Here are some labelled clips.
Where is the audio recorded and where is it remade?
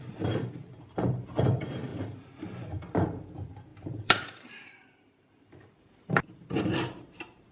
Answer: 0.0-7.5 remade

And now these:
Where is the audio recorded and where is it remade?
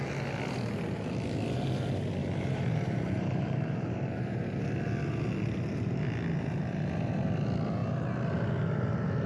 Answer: 0.0-2.2 recorded; 2.2-4.7 remade; 4.7-9.3 recorded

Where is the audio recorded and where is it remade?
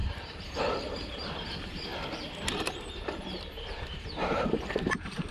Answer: 0.0-1.9 remade; 1.9-2.5 recorded; 2.5-5.3 remade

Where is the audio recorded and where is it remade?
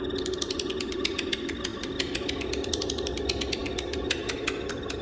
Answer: 0.0-5.0 recorded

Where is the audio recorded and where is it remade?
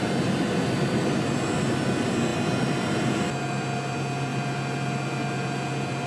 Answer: 0.0-6.1 recorded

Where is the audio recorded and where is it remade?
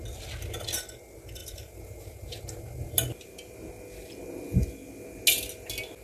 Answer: 0.0-1.4 recorded; 1.4-2.4 remade; 2.4-6.0 recorded